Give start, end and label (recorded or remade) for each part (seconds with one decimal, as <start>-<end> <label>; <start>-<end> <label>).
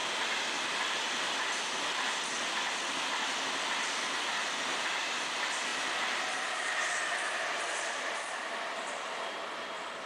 0.0-10.1 recorded